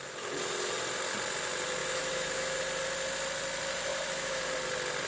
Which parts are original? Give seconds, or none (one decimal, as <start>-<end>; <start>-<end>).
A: 0.0-1.8; 2.6-3.9; 4.4-5.1